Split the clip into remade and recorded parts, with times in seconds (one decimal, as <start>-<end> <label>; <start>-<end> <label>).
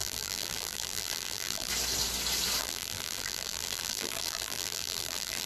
0.0-1.7 remade; 1.7-2.6 recorded; 2.6-5.5 remade